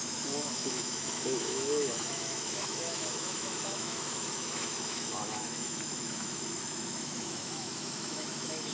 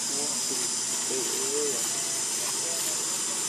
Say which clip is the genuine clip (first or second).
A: second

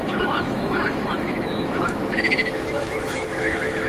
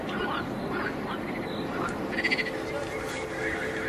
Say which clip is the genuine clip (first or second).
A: second